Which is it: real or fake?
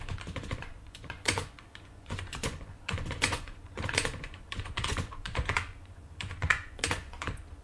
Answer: fake